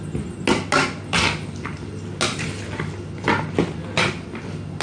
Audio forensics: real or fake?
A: real